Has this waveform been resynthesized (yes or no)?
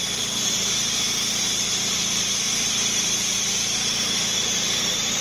yes